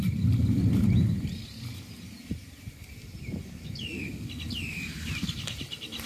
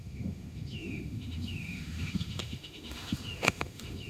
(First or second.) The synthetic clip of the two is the second